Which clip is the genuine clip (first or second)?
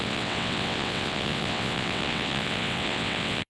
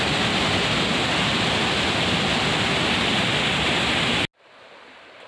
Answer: second